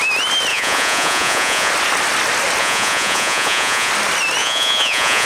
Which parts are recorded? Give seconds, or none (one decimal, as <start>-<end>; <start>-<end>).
0.0-0.5; 1.7-2.6; 3.9-4.4